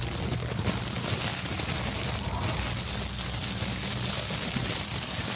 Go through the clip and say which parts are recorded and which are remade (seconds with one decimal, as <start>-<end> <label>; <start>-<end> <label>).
0.0-5.4 recorded